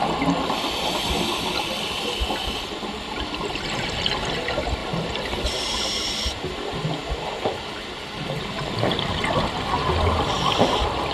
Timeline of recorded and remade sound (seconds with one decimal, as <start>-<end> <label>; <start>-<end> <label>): 0.0-11.1 recorded

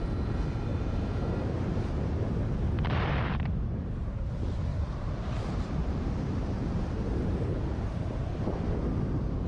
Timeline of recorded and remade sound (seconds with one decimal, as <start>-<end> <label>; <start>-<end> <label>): 0.0-0.7 recorded; 0.7-3.9 remade; 3.9-4.7 recorded; 4.7-8.6 remade; 8.6-9.5 recorded

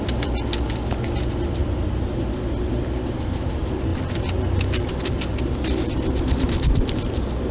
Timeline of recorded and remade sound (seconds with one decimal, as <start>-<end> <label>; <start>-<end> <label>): 0.0-3.9 recorded; 3.9-7.5 remade

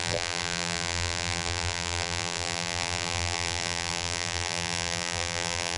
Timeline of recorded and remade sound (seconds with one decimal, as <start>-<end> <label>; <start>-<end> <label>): 0.0-5.8 remade

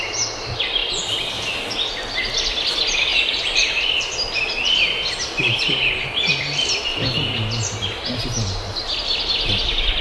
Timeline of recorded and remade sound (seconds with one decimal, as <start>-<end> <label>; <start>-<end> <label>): 0.0-3.1 recorded; 3.1-4.0 remade; 4.0-6.9 recorded; 6.9-9.5 remade; 9.5-10.0 recorded